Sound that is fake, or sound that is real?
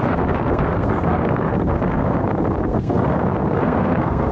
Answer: fake